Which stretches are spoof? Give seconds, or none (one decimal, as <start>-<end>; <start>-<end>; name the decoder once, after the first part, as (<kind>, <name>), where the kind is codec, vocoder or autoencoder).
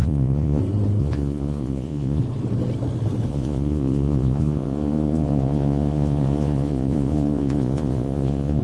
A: 0.0-0.6 (vocoder, Vocos); 1.0-2.2; 3.3-8.6